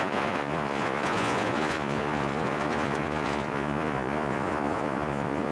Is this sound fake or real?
fake